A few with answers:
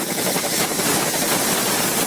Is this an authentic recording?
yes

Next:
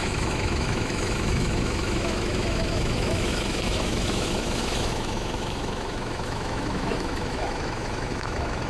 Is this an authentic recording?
no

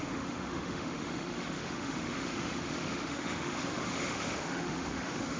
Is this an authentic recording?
no